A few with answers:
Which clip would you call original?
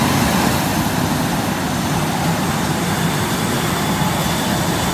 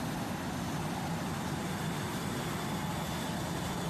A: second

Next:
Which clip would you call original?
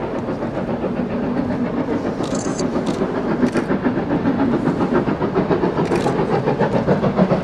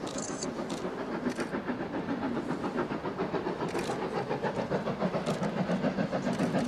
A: first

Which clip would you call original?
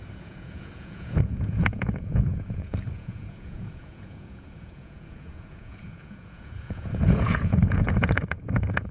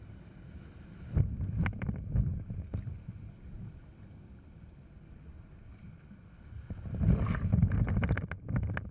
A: second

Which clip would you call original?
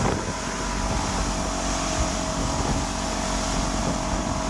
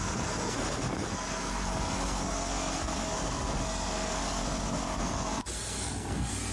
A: first